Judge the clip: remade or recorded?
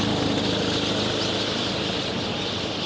recorded